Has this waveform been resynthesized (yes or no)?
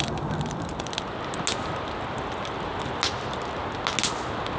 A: no